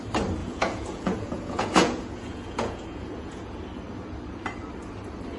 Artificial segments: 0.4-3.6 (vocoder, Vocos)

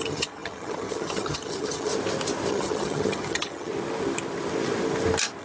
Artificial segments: 0.0-1.9 (vocoder, HiFi-GAN); 2.5-3.7

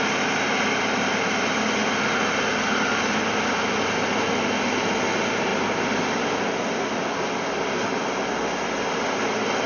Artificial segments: none